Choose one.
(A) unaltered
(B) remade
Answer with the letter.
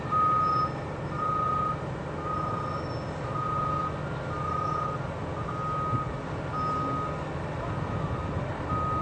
A